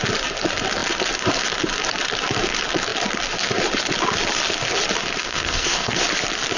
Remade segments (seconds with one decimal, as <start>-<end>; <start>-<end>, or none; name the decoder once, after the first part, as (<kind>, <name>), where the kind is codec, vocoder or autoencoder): 5.2-6.0 (codec, SNAC)